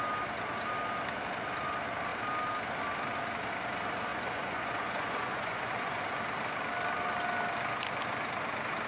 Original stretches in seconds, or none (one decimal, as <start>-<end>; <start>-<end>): 0.0-4.1; 6.0-8.9